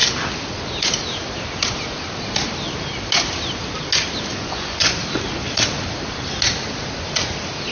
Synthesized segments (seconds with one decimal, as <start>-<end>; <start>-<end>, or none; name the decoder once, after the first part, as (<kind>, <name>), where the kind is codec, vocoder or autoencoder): 4.3-5.0 (vocoder, Vocos)